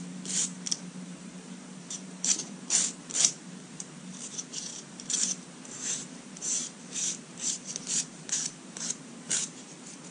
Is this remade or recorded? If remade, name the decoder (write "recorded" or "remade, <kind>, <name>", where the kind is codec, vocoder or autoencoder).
remade, vocoder, BigVGAN v2